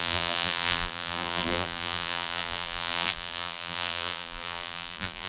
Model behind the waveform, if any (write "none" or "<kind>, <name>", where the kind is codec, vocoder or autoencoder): vocoder, BigVGAN v2